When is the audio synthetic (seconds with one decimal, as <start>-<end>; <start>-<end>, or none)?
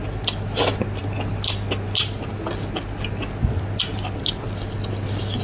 none